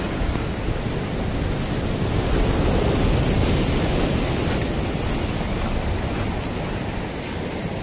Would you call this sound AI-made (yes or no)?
no